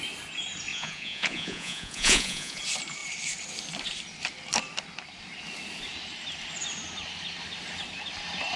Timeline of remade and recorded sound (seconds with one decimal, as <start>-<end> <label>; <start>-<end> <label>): 0.0-0.7 recorded; 0.7-2.6 remade; 2.6-8.6 recorded